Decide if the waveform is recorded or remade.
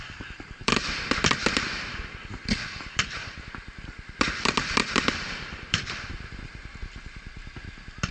remade